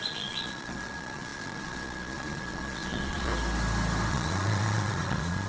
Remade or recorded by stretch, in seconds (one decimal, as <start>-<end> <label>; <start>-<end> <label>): 0.0-3.3 remade; 3.3-4.1 recorded; 4.1-5.5 remade